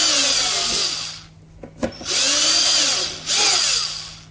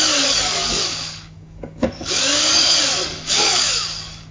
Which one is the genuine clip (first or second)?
first